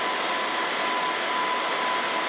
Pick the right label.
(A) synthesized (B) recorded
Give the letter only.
B